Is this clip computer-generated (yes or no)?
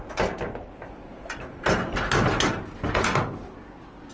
no